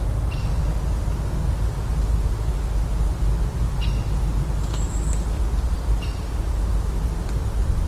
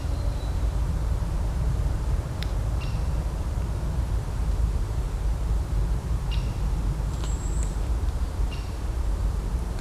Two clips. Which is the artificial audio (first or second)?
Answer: second